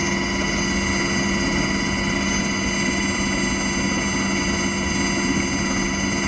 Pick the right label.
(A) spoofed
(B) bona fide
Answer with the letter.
B